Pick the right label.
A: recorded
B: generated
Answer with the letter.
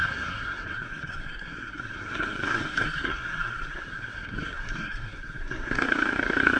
B